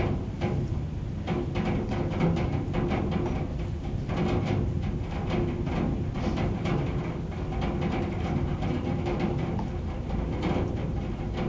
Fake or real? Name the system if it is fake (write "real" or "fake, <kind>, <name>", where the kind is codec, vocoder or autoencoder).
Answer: real